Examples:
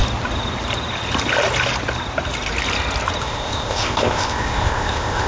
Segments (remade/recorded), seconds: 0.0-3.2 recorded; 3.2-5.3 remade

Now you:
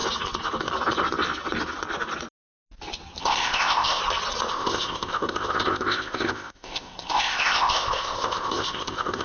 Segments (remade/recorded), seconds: 0.0-3.2 recorded; 3.2-4.0 remade; 4.0-4.5 recorded; 4.5-9.2 remade

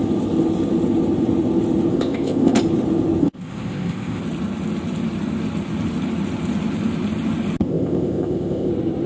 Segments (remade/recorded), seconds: 0.0-1.9 recorded; 1.9-2.6 remade; 2.6-3.2 recorded; 3.2-4.2 remade; 4.2-7.6 recorded; 7.6-8.7 remade; 8.7-9.1 recorded

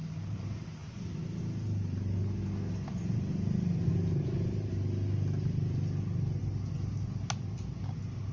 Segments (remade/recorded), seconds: 0.0-8.3 recorded

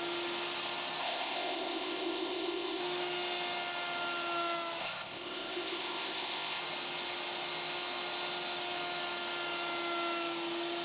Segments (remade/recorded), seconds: 0.0-1.0 recorded; 1.0-2.8 remade; 2.8-4.8 recorded; 4.8-6.6 remade; 6.6-10.8 recorded